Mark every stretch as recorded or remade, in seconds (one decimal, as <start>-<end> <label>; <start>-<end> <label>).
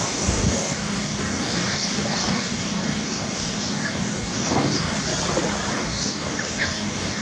0.0-5.1 remade; 5.1-5.7 recorded; 5.7-7.2 remade